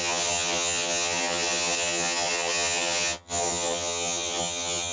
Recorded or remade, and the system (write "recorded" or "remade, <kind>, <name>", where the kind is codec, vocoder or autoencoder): remade, vocoder, HiFi-GAN